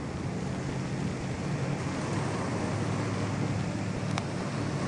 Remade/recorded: recorded